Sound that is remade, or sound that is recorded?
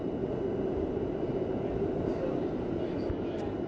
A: recorded